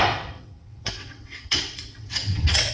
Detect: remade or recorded remade